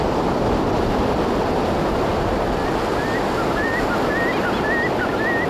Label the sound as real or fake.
real